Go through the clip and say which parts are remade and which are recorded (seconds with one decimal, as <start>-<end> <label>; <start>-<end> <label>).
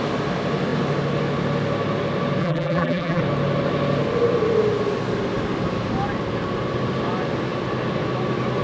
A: 0.0-2.4 recorded; 2.4-3.2 remade; 3.2-8.6 recorded